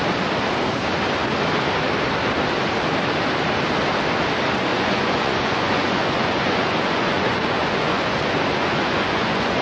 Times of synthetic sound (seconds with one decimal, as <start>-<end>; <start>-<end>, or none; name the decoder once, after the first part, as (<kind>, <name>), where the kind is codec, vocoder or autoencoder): 4.7-9.6 (vocoder, Vocos)